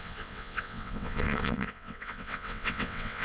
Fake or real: fake